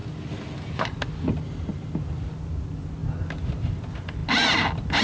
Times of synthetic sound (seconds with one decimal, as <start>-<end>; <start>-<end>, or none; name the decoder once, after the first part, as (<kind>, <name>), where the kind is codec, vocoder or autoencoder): none